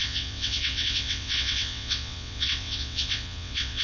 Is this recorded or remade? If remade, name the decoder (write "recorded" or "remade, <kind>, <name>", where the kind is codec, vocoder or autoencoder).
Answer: remade, vocoder, WaveNeXt